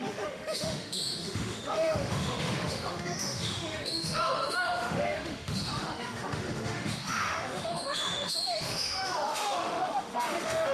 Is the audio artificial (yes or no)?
yes